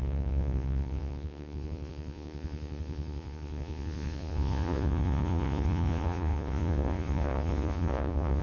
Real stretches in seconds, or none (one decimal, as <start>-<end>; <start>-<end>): none